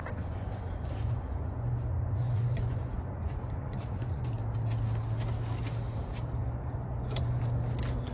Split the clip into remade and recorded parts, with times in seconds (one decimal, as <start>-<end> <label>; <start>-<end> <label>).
0.0-4.3 remade; 4.3-6.4 recorded; 6.4-7.4 remade; 7.4-8.1 recorded